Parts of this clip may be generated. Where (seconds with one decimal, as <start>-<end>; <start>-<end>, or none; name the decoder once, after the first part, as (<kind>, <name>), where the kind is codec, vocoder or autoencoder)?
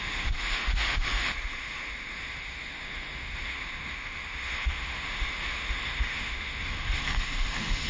0.0-7.9 (autoencoder, DAC-VAE)